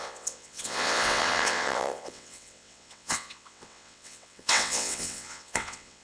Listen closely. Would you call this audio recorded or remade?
remade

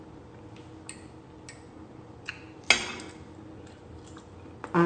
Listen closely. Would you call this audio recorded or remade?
recorded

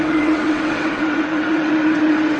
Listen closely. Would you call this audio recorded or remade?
remade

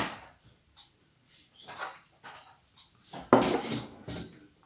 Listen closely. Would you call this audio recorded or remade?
recorded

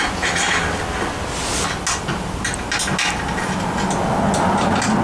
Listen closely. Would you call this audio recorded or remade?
recorded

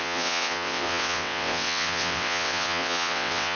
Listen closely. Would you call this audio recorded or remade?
remade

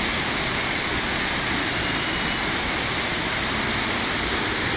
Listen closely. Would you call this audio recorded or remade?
recorded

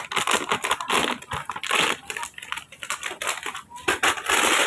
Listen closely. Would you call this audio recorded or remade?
recorded